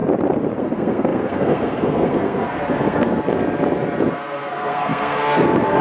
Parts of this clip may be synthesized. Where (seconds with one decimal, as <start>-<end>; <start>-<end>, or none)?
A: 0.6-3.1; 4.1-5.8